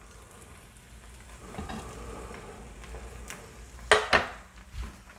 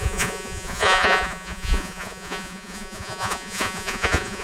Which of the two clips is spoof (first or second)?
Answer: second